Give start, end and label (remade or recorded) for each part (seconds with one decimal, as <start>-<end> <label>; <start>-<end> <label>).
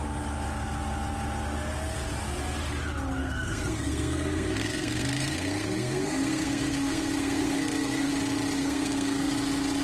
0.0-3.2 recorded; 3.2-8.1 remade; 8.1-8.6 recorded; 8.6-9.3 remade; 9.3-9.8 recorded